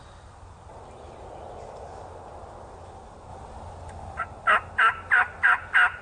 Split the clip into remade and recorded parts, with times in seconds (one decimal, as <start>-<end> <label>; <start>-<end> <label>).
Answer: 0.0-6.0 recorded